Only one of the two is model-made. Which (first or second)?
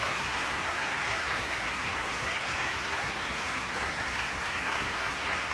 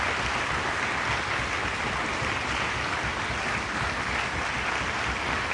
first